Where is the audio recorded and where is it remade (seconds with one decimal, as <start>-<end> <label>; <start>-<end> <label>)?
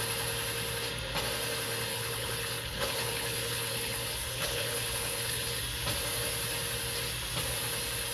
0.0-1.9 recorded; 1.9-5.6 remade; 5.6-8.1 recorded